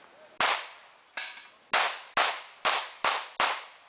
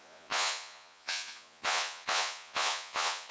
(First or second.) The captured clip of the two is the first